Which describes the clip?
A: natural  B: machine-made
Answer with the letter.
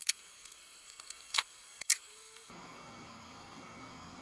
B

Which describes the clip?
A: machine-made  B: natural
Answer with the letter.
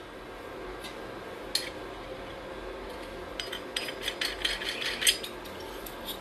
B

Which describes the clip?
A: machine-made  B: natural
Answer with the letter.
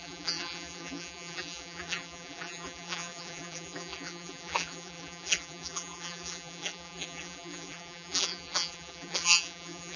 A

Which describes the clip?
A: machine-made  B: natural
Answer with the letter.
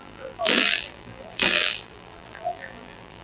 A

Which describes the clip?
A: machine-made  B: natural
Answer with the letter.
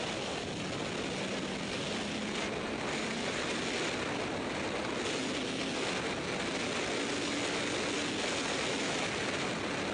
B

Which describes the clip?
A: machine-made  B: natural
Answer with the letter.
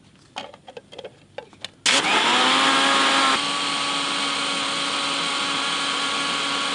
B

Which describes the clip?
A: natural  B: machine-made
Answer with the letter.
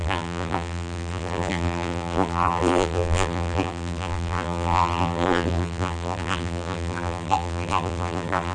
B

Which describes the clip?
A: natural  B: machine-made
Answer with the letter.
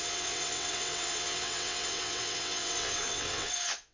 B